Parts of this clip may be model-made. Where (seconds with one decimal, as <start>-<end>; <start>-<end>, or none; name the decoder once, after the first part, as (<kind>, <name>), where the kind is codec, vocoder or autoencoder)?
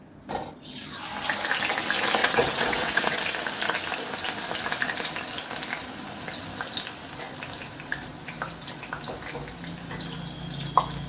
2.2-3.2 (vocoder, WaveNeXt)